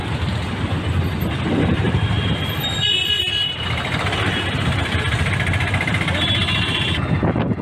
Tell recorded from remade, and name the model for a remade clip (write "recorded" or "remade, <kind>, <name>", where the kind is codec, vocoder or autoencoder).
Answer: recorded